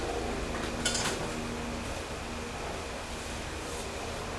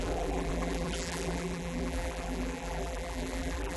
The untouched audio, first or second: first